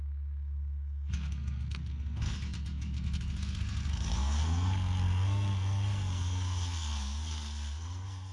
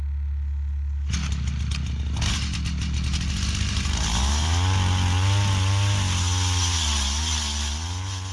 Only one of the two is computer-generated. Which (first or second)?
first